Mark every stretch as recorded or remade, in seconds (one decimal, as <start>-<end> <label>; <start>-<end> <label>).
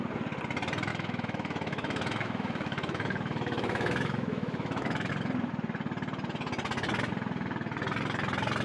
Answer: 0.0-0.9 recorded; 0.9-5.1 remade; 5.1-8.6 recorded